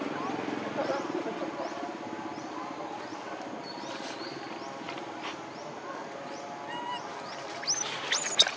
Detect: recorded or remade recorded